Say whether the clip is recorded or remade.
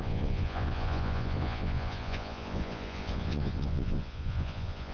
remade